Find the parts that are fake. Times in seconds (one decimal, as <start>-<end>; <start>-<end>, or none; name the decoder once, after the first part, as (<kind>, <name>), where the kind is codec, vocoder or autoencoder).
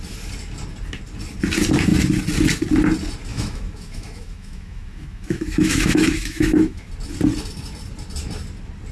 3.3-6.9 (autoencoder, DAC-VAE)